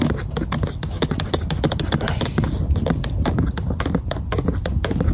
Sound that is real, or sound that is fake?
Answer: real